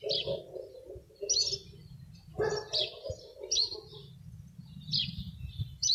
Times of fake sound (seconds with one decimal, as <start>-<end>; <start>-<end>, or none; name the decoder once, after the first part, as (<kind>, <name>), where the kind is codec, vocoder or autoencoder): none